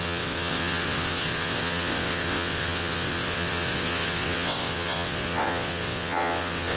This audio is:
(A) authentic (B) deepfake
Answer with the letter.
B